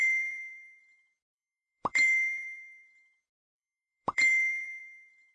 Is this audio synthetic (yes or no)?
yes